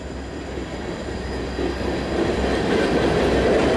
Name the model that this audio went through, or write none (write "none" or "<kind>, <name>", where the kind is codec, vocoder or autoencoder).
none